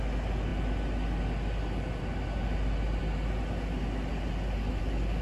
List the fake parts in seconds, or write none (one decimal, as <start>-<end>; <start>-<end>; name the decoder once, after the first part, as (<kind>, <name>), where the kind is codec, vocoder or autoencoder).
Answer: none